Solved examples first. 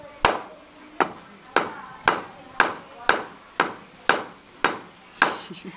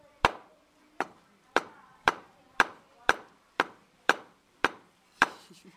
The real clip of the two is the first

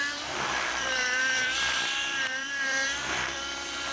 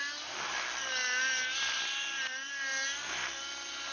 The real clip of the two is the second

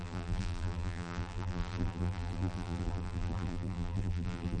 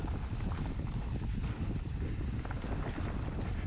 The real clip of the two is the second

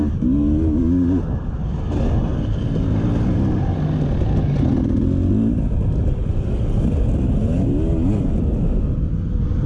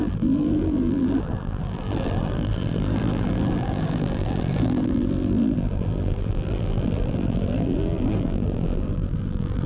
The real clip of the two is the first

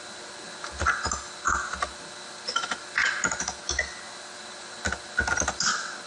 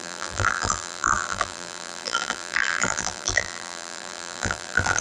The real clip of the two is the first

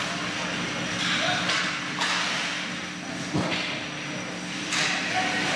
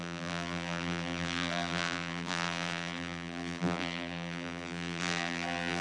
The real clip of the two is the first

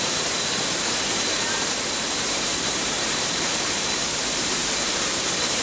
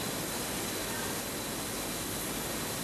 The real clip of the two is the second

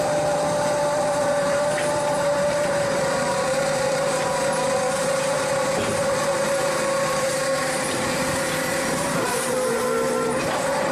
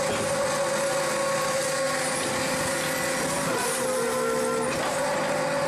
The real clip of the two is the second